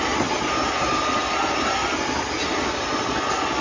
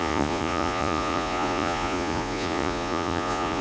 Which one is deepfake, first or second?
second